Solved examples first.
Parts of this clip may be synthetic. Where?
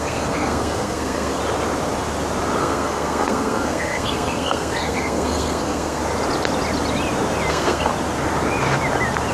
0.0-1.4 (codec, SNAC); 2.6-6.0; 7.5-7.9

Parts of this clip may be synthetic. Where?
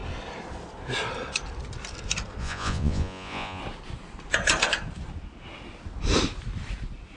2.4-3.6 (vocoder, Vocos)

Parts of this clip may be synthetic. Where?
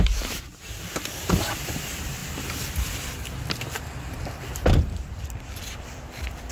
2.2-6.1 (vocoder, BigVGAN v2)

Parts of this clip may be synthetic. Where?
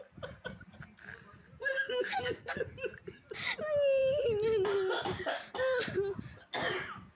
1.6-2.7 (codec, SNAC)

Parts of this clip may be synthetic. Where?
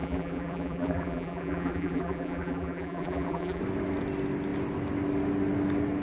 0.0-3.6 (vocoder, BigVGAN v2)